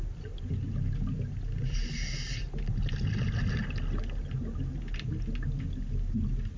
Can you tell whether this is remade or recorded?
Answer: recorded